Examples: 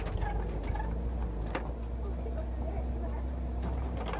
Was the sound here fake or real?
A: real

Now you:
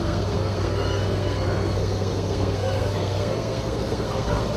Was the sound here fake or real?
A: fake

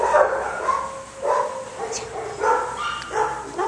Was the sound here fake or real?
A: real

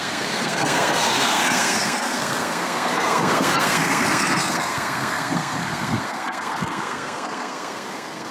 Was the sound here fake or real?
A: fake